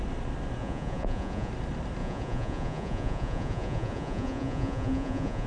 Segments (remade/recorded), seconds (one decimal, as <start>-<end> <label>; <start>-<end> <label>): 0.0-0.6 recorded; 0.6-1.5 remade; 1.5-2.0 recorded; 2.0-5.5 remade